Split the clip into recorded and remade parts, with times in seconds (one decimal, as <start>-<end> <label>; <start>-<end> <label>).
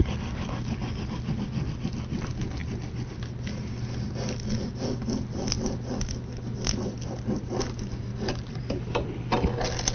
0.0-9.9 recorded